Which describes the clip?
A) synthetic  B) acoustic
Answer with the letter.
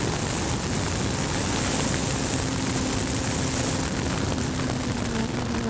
B